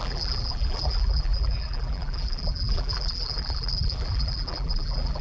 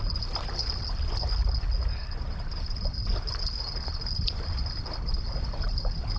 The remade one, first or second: first